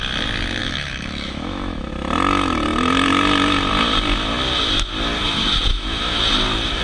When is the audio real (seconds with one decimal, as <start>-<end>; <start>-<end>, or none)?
0.0-0.6; 1.9-5.7; 6.2-6.8